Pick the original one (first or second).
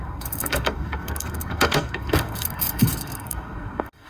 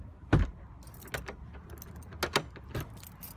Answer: second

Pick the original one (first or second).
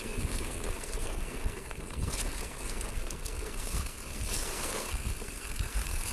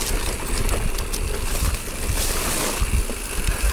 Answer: second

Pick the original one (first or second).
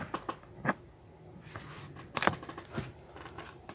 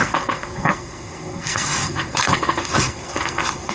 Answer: first